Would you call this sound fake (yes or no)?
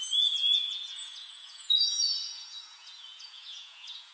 yes